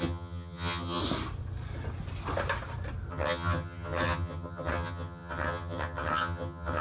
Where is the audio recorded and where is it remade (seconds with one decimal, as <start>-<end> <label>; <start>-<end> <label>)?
0.0-1.0 remade; 1.0-3.1 recorded; 3.1-6.8 remade